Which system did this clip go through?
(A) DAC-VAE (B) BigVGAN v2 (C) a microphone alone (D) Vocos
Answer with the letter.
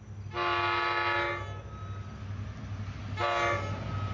C